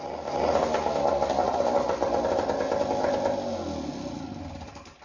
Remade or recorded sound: recorded